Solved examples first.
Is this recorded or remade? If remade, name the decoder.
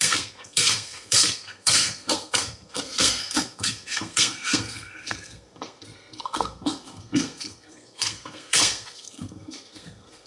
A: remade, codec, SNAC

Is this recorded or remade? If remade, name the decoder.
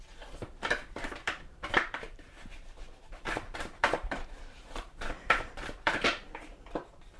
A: remade, vocoder, BigVGAN v2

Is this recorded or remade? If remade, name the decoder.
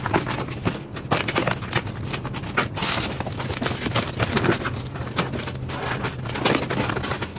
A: recorded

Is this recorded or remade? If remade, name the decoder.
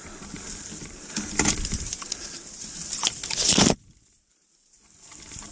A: recorded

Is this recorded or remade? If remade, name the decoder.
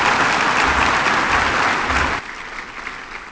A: recorded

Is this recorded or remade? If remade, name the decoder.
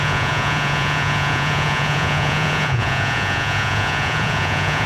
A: remade, vocoder, Vocos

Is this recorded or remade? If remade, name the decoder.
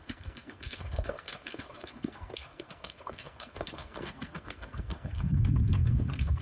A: remade, codec, SNAC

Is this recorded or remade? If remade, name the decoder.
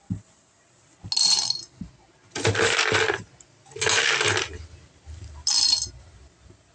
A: recorded